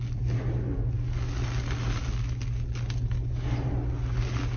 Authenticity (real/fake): real